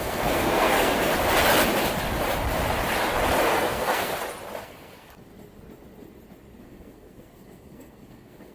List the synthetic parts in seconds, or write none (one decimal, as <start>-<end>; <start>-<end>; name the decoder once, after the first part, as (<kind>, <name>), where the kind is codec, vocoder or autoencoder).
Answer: 0.0-1.1 (codec, SNAC); 3.5-4.1; 4.6-5.3; 6.6-8.5